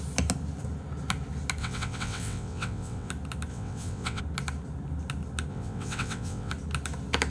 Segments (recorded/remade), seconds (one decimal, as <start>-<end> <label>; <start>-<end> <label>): 0.0-1.6 recorded; 1.6-3.1 remade; 3.1-3.5 recorded; 3.5-4.2 remade; 4.2-5.5 recorded; 5.5-6.5 remade; 6.5-7.3 recorded